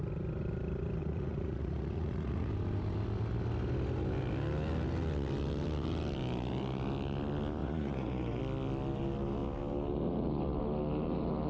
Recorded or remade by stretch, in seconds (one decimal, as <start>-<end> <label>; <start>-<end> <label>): 0.0-1.0 recorded; 1.0-2.5 remade; 2.5-7.6 recorded; 7.6-8.4 remade; 8.4-11.5 recorded

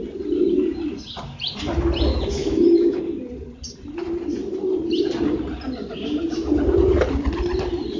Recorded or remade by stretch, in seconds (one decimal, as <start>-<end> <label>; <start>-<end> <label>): 0.0-2.4 recorded; 2.4-3.0 remade; 3.0-8.0 recorded

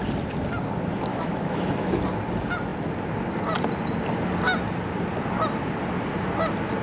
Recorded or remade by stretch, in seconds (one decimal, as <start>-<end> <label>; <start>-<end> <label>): 0.0-1.1 recorded; 1.1-2.0 remade; 2.0-6.8 recorded